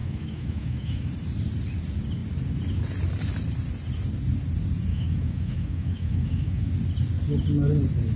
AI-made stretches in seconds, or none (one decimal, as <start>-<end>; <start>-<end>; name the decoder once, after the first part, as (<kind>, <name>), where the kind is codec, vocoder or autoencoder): 0.0-1.1 (autoencoder, DAC-VAE); 4.9-6.7